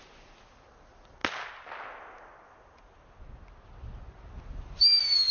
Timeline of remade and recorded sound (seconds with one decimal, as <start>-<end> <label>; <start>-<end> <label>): 0.0-5.3 recorded